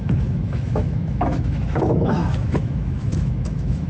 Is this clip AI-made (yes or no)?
yes